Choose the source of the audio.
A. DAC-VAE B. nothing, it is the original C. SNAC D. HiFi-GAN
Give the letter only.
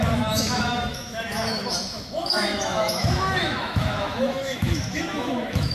A